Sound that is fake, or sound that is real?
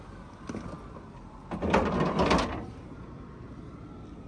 real